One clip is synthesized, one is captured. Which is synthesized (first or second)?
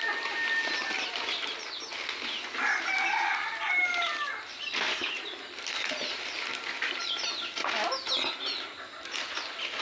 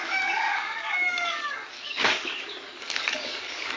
second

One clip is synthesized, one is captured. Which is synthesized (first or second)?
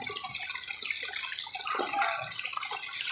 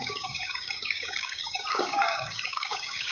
second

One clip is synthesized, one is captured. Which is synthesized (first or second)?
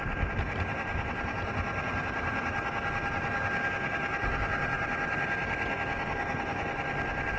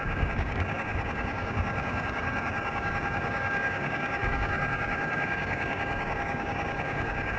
second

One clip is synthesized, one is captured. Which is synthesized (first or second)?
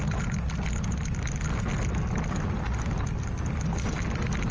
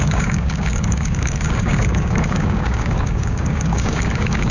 second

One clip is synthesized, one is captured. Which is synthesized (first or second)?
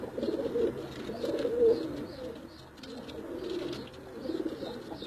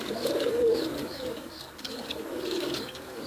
second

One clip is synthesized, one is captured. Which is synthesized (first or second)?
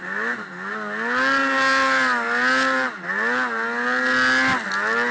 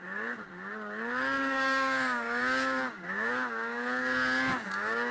second